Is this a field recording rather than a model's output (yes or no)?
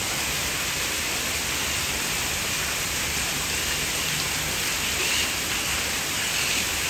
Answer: no